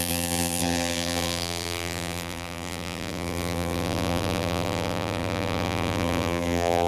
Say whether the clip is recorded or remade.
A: remade